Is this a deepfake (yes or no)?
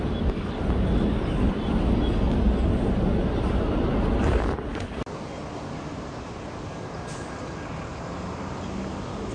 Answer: no